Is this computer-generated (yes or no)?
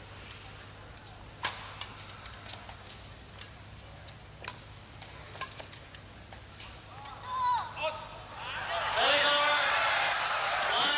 no